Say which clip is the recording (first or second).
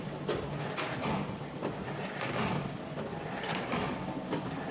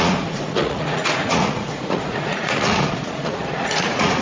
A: first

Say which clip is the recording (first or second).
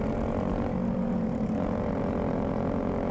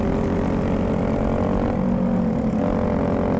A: second